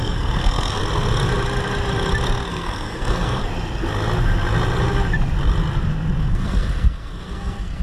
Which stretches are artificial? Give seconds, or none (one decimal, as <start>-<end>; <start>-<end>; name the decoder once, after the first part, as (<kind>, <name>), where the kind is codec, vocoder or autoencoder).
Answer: 0.0-0.8 (codec, SNAC); 2.5-3.4; 6.2-7.8